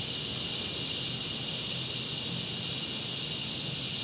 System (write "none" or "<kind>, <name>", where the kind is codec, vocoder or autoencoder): none